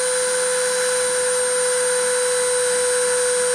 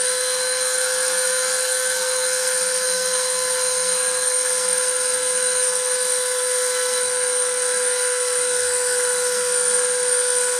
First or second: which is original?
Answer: first